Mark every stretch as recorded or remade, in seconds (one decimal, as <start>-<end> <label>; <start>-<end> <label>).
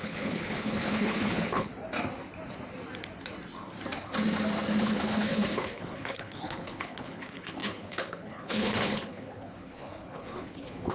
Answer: 0.0-1.7 remade; 1.7-4.8 recorded; 4.8-10.9 remade